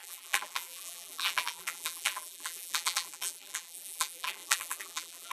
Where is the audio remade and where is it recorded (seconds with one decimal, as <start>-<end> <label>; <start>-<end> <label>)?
0.0-5.3 remade